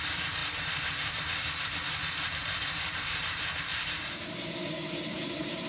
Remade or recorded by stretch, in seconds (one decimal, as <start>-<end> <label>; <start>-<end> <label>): 0.0-0.4 remade; 0.4-1.6 recorded; 1.6-5.7 remade